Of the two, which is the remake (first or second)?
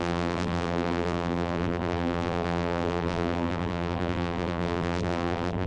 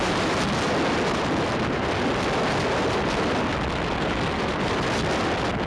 first